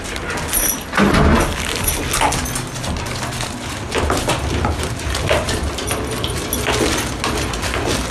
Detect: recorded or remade recorded